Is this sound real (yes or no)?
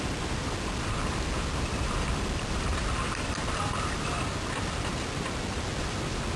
yes